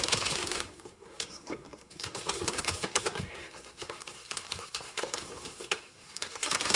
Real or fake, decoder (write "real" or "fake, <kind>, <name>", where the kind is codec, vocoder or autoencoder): fake, codec, SNAC